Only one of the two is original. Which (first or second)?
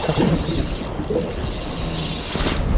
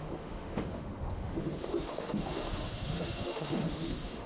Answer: first